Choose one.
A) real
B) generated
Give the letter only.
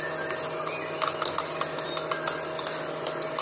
A